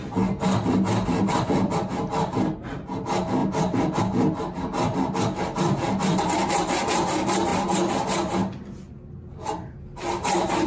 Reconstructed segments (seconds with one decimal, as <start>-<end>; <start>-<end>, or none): none